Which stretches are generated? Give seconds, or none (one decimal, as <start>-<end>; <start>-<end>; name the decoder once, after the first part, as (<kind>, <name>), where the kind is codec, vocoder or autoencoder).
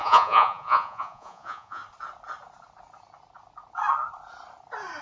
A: 0.0-1.8 (vocoder, Vocos)